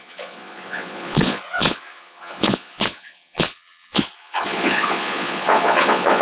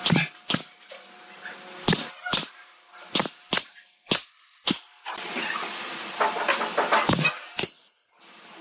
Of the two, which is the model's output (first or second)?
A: first